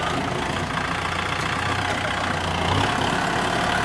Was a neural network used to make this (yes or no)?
no